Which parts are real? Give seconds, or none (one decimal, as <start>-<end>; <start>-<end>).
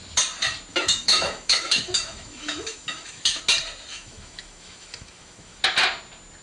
0.0-0.7; 3.4-3.9; 5.6-6.4